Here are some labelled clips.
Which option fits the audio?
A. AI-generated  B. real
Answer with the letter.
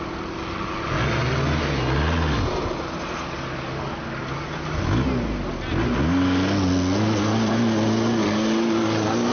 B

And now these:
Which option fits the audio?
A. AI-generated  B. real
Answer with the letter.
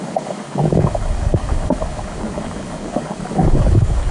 A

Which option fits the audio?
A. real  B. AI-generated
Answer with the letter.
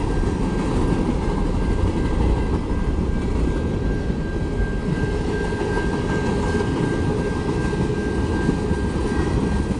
A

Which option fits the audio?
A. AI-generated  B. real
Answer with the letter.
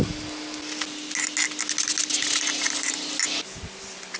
B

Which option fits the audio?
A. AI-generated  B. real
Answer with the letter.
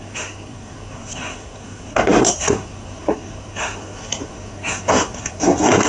A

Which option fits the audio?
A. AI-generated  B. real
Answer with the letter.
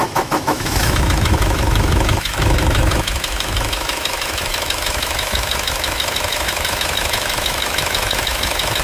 A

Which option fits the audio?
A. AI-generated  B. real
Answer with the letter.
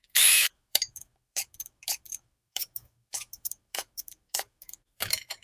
A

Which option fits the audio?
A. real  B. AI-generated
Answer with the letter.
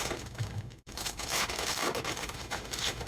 B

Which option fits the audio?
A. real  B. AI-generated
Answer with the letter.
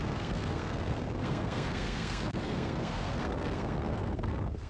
B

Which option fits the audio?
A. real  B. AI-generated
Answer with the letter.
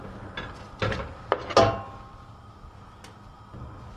A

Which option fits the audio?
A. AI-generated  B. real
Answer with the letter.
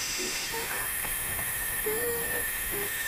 A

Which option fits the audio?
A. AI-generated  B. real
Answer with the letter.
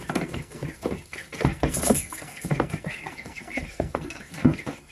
A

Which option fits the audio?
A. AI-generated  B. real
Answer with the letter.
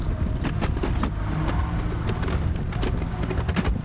B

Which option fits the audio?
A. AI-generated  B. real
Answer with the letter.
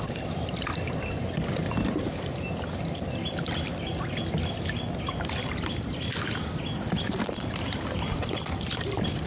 B